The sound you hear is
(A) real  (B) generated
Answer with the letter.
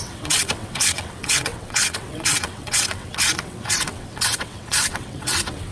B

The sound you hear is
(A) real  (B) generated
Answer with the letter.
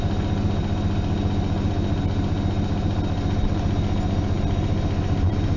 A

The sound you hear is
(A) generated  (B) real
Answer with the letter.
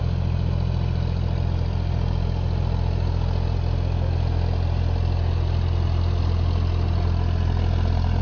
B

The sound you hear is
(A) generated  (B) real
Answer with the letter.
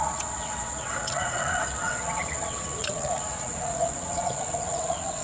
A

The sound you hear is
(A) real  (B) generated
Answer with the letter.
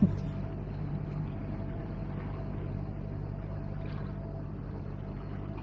A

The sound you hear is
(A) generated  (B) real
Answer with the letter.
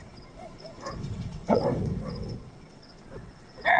A